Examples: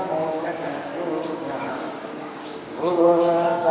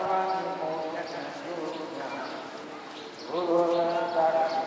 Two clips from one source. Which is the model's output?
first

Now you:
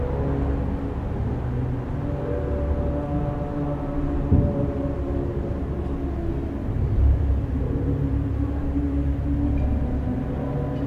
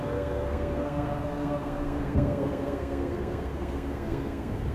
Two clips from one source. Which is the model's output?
second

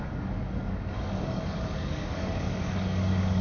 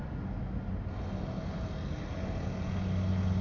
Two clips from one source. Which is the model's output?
first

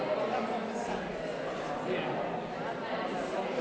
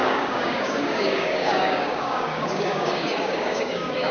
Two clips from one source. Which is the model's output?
second